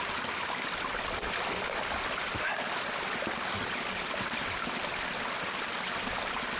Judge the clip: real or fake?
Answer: real